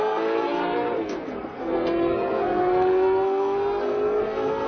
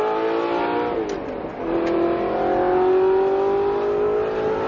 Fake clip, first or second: first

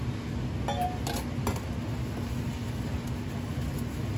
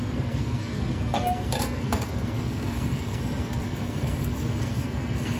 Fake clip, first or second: second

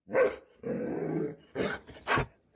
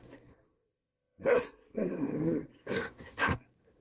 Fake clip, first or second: second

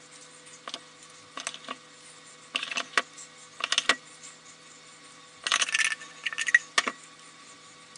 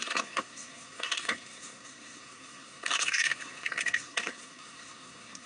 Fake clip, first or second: second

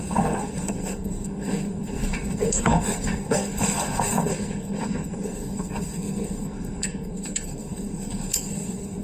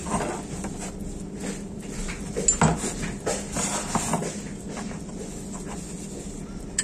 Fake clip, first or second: first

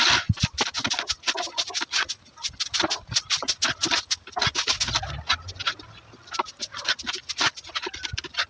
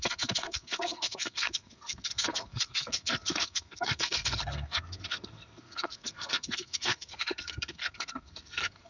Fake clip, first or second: second